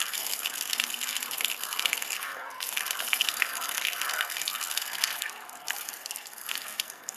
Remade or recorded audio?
remade